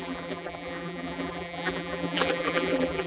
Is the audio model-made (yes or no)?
yes